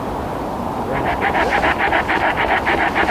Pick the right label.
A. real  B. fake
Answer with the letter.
A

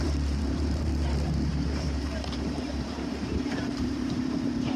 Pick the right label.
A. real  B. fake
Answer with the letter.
B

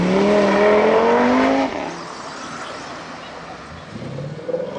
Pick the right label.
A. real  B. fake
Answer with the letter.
A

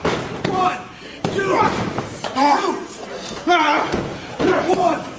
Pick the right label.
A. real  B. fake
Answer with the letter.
B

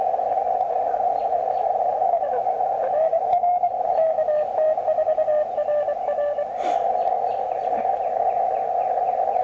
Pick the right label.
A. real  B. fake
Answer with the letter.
A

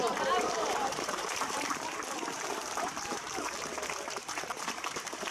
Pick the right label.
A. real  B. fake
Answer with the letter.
B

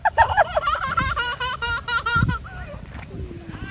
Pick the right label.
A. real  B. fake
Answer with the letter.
B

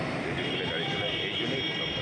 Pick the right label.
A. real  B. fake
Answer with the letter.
A